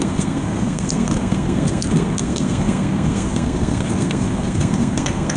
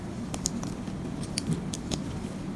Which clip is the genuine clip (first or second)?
second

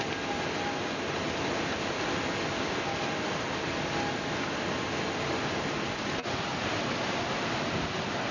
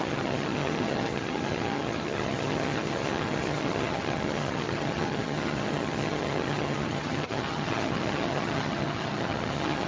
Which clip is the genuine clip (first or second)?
first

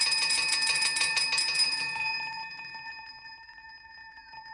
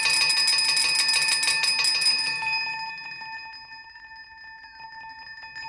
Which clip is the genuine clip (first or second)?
second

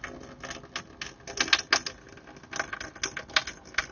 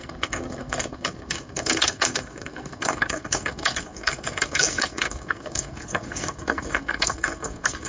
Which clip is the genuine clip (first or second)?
first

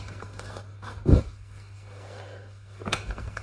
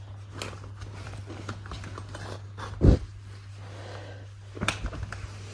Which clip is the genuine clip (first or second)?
second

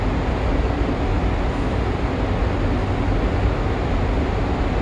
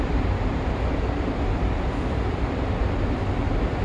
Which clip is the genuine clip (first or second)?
first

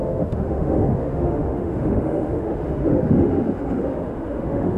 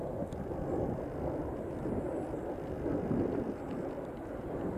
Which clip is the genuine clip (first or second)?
second